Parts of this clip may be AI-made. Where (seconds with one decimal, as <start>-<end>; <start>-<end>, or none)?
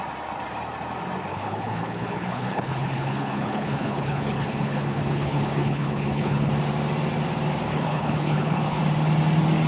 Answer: 1.3-6.5; 7.7-8.8